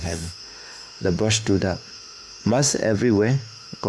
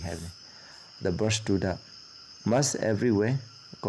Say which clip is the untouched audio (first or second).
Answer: second